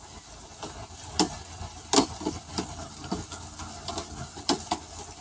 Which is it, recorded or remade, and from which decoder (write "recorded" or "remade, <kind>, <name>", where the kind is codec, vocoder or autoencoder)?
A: recorded